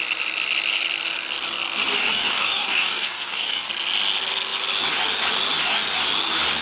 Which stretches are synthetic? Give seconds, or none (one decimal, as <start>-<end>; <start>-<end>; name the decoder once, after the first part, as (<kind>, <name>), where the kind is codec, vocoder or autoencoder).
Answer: 2.1-3.7 (codec, DAC)